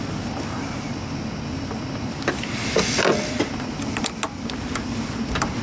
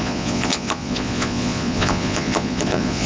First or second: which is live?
first